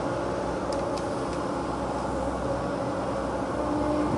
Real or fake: real